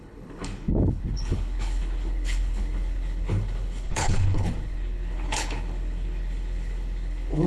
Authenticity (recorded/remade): remade